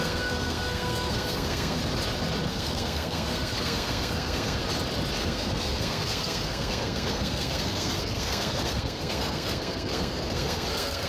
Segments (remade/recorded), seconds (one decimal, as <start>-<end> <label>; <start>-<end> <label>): 0.0-1.8 remade; 1.8-2.5 recorded; 2.5-4.6 remade; 4.6-5.2 recorded; 5.2-11.1 remade